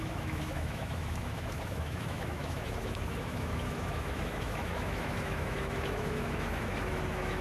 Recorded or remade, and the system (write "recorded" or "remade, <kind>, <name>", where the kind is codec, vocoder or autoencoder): remade, autoencoder, DAC-VAE